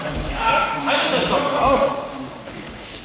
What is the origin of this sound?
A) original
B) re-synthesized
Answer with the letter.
B